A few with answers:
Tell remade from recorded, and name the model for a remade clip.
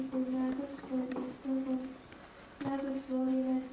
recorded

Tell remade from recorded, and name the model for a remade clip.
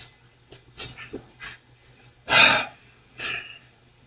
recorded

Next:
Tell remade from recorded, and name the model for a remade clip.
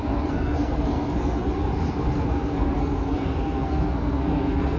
remade, codec, SNAC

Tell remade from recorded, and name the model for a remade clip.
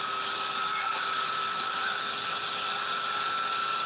recorded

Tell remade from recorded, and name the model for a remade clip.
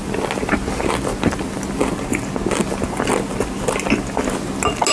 recorded